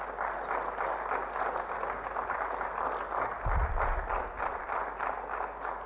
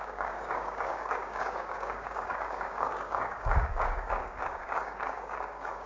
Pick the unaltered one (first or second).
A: first